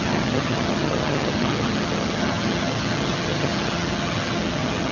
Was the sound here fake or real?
fake